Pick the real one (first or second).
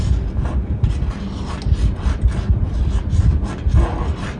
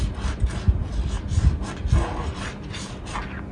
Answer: second